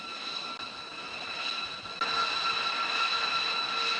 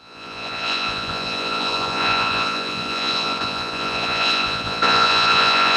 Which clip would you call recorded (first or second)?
first